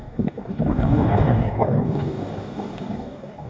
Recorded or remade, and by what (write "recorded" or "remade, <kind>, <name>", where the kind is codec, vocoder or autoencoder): remade, codec, DAC